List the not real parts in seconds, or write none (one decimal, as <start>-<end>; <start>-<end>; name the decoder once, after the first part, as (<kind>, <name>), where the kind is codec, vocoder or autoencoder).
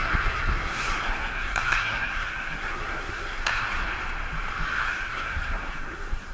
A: 0.0-3.9 (codec, SNAC); 4.8-6.3